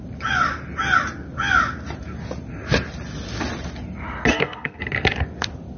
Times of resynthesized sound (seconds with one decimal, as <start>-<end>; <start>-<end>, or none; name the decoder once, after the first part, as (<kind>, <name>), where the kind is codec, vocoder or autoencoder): 4.3-4.8 (codec, SNAC)